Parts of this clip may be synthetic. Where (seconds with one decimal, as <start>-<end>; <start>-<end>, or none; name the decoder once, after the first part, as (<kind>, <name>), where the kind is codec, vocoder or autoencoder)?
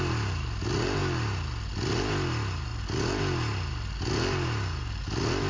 none